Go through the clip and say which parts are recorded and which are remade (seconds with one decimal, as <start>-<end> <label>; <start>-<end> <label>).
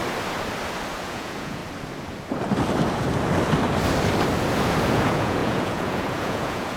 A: 0.0-0.9 recorded; 0.9-1.6 remade; 1.6-4.9 recorded; 4.9-6.8 remade